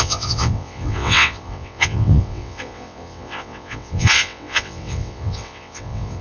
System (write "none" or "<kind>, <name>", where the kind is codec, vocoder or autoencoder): vocoder, WaveNeXt